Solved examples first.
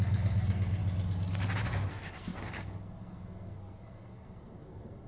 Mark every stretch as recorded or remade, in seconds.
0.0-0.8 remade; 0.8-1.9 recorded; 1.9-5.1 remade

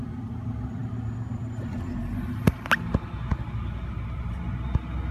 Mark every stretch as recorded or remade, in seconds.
0.0-5.1 recorded

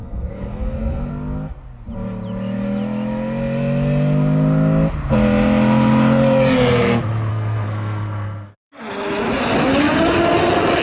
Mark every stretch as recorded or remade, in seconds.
0.0-1.1 remade; 1.1-7.3 recorded; 7.3-8.7 remade; 8.7-10.8 recorded

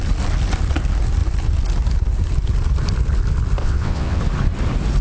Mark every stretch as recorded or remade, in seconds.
0.0-3.6 recorded; 3.6-4.2 remade; 4.2-5.0 recorded

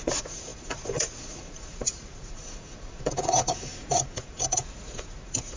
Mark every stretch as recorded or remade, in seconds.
0.0-5.6 remade